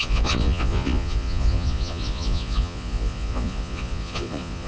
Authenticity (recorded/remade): remade